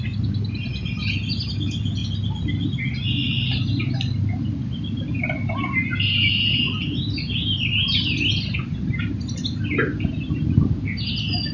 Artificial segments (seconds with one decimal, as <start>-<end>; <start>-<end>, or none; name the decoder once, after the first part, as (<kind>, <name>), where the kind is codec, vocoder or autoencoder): none